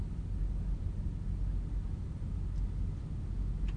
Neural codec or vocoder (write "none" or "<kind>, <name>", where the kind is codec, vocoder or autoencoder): none